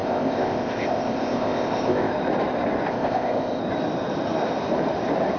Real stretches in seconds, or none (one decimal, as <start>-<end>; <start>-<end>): 2.1-2.9; 3.6-5.4